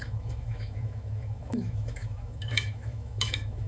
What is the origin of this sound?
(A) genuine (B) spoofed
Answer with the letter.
B